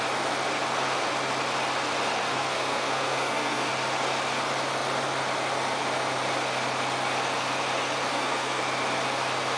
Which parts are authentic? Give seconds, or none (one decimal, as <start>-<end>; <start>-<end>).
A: 0.0-2.3; 3.7-8.1; 8.6-9.6